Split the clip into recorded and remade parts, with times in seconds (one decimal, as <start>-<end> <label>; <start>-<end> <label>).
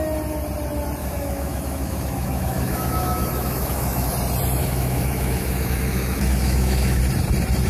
0.0-1.0 recorded; 1.0-4.1 remade; 4.1-4.6 recorded; 4.6-7.0 remade; 7.0-7.7 recorded